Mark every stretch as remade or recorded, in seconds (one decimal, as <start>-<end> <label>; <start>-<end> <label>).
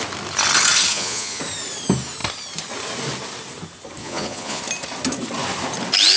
0.0-0.9 recorded; 0.9-1.4 remade; 1.4-4.0 recorded; 4.0-4.6 remade; 4.6-6.2 recorded